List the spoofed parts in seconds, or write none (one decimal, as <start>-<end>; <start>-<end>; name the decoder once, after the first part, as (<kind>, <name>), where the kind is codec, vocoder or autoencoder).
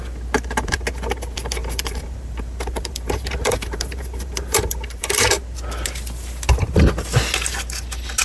1.6-5.4 (vocoder, BigVGAN v2)